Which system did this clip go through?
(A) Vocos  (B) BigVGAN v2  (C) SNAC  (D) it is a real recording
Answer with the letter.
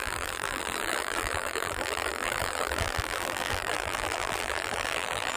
B